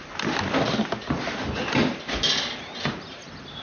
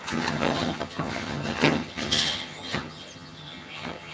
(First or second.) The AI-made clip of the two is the second